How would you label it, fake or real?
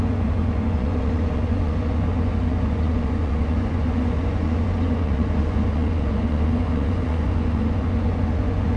fake